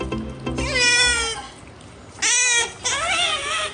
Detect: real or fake real